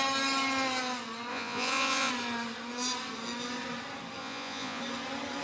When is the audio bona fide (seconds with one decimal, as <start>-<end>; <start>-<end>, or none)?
0.0-1.3; 2.1-4.2; 4.8-5.4